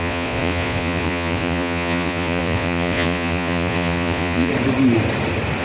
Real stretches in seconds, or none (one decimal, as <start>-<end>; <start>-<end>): 4.5-5.6

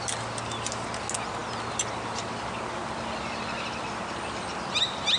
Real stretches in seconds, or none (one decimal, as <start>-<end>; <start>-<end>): 0.0-5.2

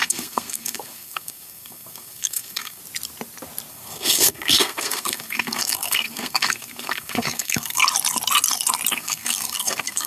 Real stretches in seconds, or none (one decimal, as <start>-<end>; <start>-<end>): 2.8-3.7; 7.8-8.9